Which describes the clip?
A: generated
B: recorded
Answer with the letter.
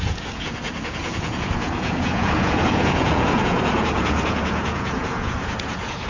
A